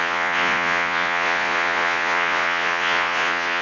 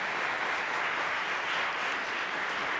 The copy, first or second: first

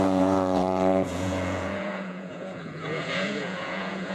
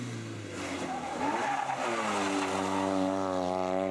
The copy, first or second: first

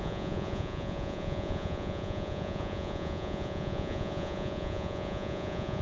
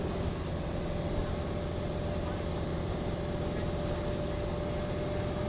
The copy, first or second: first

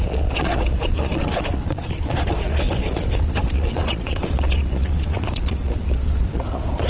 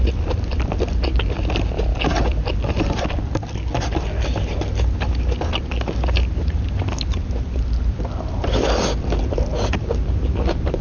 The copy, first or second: first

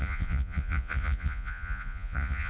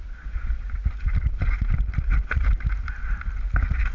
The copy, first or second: first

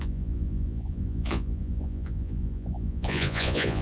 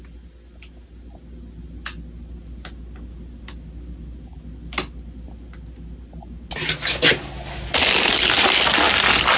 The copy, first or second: first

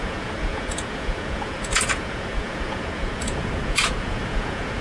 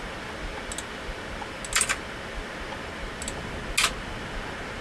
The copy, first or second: first